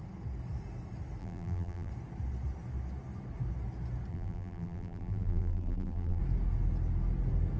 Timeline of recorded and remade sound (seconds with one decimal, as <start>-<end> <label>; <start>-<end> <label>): 0.0-1.2 recorded; 1.2-1.9 remade; 1.9-4.1 recorded; 4.1-6.2 remade; 6.2-7.6 recorded

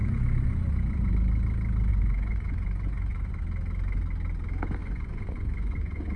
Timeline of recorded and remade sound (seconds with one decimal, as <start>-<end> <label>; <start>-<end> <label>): 0.0-1.1 remade; 1.1-1.9 recorded; 1.9-3.4 remade; 3.4-4.8 recorded; 4.8-6.2 remade

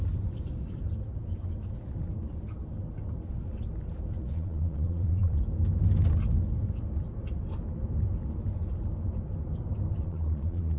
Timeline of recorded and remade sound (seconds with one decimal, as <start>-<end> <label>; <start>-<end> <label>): 0.0-4.2 recorded; 4.2-5.4 remade; 5.4-10.0 recorded; 10.0-10.8 remade